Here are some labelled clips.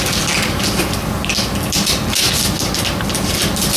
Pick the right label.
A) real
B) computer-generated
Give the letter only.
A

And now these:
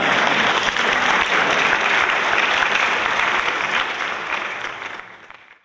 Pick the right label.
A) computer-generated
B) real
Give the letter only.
B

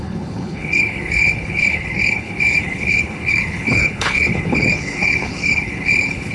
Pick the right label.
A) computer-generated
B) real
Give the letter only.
A